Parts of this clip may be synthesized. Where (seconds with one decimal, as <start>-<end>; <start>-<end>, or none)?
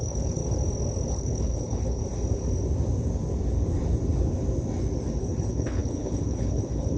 0.0-0.4; 1.1-2.0; 5.2-7.0